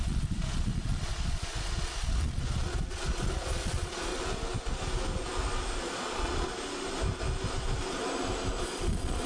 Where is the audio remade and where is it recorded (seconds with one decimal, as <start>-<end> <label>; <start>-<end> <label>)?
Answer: 0.0-4.1 remade; 4.1-5.8 recorded; 5.8-6.5 remade; 6.5-8.6 recorded; 8.6-9.3 remade